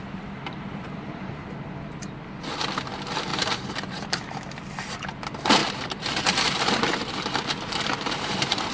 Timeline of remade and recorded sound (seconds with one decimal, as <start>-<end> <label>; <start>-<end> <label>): 0.0-1.3 remade; 1.3-3.3 recorded; 3.3-4.4 remade; 4.4-5.6 recorded; 5.6-8.7 remade